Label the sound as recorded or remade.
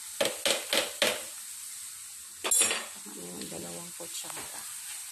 recorded